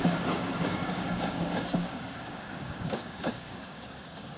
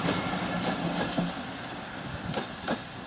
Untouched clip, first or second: second